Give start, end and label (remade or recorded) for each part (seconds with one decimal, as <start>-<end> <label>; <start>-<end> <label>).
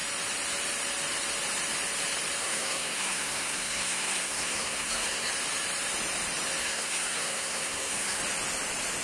0.0-2.4 recorded; 2.4-5.3 remade; 5.3-6.6 recorded; 6.6-8.2 remade; 8.2-9.0 recorded